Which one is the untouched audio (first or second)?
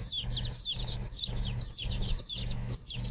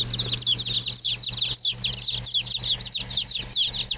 second